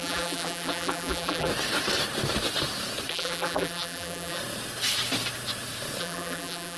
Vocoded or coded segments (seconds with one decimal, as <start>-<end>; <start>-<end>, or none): 0.0-1.5; 3.1-4.4; 6.0-6.8